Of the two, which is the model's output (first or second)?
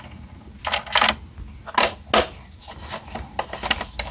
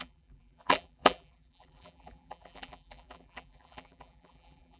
second